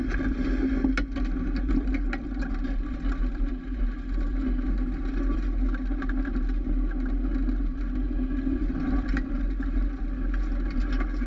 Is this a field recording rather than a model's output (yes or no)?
yes